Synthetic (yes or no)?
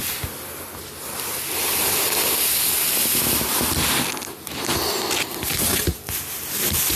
no